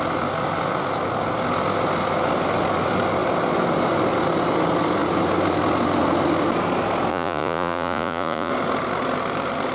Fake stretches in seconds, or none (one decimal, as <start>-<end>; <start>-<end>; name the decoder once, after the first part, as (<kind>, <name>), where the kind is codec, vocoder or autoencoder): 7.1-8.5 (vocoder, Vocos)